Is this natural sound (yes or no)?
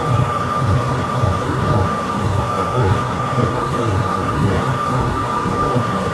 no